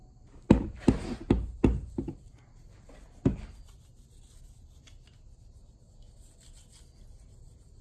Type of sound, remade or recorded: recorded